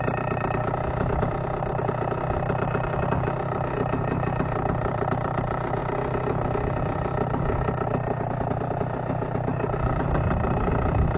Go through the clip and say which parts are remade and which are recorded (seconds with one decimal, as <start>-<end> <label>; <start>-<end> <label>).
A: 0.0-11.2 recorded